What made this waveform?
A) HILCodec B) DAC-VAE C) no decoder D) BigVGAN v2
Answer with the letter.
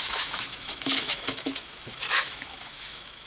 B